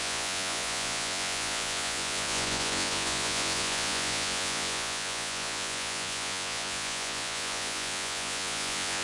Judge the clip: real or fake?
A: fake